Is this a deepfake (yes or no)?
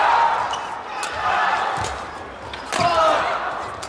no